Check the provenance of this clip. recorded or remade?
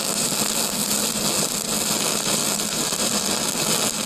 recorded